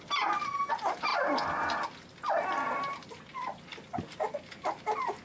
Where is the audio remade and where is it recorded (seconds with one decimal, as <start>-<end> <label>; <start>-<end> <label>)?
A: 0.0-5.2 recorded